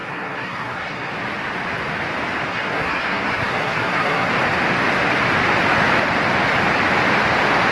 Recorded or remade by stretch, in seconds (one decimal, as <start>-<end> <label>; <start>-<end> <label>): 0.0-1.1 remade; 1.1-2.5 recorded; 2.5-4.3 remade; 4.3-7.7 recorded